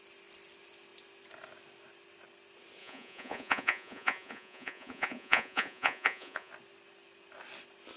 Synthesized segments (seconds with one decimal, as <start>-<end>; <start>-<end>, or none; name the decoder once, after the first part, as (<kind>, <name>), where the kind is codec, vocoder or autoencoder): 2.8-6.5 (vocoder, Vocos)